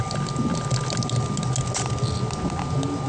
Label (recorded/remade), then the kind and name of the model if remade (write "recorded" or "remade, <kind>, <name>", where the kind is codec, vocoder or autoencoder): recorded